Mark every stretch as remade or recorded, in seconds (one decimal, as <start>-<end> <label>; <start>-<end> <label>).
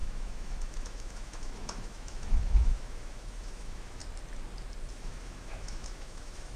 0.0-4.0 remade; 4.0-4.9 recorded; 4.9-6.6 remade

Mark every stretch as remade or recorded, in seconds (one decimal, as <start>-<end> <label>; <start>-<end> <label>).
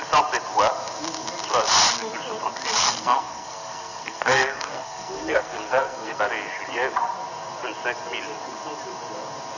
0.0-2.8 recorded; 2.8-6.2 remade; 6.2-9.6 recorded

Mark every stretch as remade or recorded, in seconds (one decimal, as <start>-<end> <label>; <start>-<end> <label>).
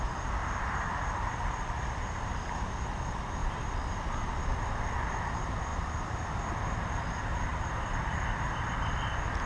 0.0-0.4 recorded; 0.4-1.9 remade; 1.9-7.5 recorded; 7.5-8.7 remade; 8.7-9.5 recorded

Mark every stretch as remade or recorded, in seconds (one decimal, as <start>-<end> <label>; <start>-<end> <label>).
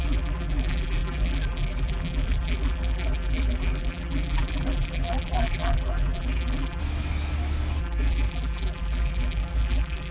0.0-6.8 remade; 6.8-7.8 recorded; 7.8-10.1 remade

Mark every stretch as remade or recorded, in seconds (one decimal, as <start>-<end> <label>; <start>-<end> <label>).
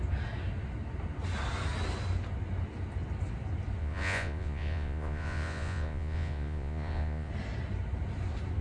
0.0-3.8 recorded; 3.8-7.3 remade; 7.3-8.6 recorded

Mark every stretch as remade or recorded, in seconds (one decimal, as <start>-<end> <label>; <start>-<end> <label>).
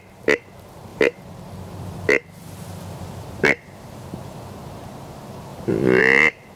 0.0-0.9 recorded; 0.9-4.9 remade; 4.9-5.5 recorded; 5.5-6.0 remade; 6.0-6.6 recorded